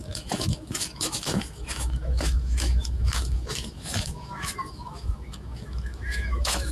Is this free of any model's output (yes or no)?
no